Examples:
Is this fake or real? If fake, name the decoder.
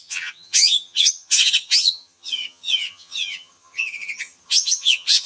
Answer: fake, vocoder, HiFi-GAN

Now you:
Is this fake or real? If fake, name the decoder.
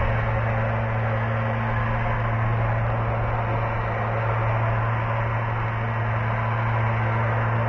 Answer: real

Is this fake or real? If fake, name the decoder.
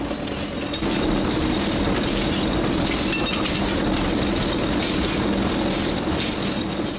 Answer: real